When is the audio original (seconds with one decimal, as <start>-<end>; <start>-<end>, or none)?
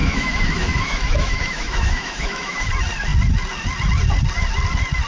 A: 2.7-5.1